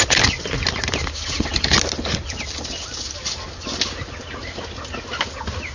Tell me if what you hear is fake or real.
real